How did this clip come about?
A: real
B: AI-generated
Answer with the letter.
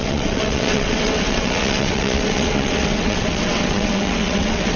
B